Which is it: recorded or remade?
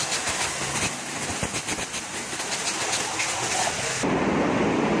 recorded